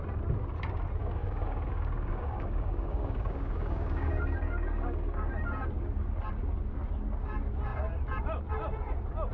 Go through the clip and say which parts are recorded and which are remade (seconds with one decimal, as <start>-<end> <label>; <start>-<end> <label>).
0.0-1.0 recorded; 1.0-5.3 remade; 5.3-9.3 recorded